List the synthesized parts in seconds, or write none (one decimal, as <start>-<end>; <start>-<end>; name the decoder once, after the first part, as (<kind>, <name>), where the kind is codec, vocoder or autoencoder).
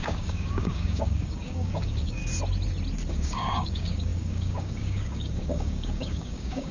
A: 0.0-2.2 (codec, DAC); 3.1-6.7